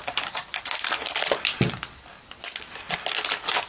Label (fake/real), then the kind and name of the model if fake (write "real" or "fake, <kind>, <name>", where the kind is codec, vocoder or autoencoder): fake, vocoder, BigVGAN v2